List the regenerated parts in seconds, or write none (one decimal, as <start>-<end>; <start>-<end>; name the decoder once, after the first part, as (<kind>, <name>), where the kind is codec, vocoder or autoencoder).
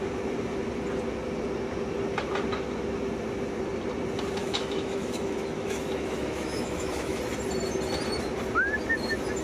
4.4-7.2 (autoencoder, DAC-VAE)